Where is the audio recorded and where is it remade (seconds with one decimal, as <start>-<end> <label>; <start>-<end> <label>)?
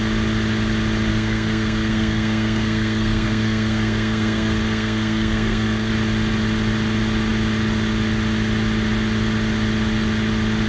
0.0-1.1 recorded; 1.1-5.9 remade; 5.9-10.7 recorded